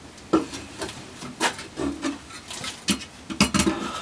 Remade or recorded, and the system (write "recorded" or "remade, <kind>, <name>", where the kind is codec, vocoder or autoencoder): recorded